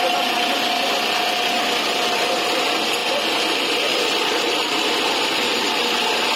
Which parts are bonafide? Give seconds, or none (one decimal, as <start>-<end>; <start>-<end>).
0.0-6.4